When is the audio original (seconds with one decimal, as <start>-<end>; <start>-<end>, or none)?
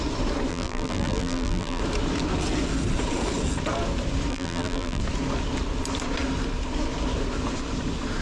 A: 0.0-0.5; 1.8-4.3; 5.0-8.2